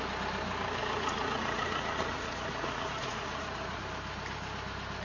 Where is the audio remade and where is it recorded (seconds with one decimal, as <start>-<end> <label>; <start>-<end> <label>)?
0.0-0.8 recorded; 0.8-3.8 remade; 3.8-5.0 recorded